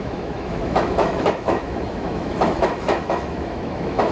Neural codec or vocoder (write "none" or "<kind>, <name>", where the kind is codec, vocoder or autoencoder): autoencoder, DAC-VAE